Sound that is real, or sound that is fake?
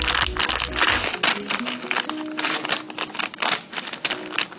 real